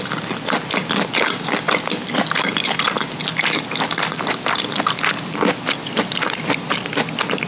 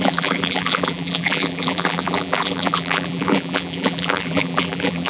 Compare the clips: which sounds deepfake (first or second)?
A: second